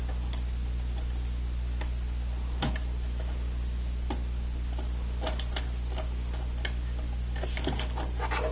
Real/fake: real